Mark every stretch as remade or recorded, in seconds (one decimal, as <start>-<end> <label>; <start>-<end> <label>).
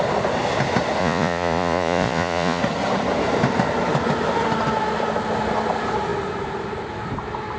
0.0-1.0 recorded; 1.0-2.6 remade; 2.6-7.6 recorded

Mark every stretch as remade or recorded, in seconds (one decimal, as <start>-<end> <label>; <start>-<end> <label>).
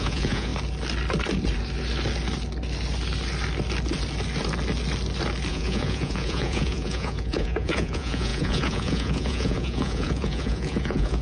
0.0-0.5 remade; 0.5-5.5 recorded; 5.5-11.2 remade